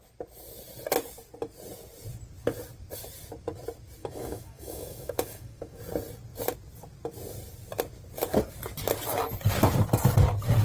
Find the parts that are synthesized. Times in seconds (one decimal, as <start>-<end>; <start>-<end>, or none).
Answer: 4.0-5.8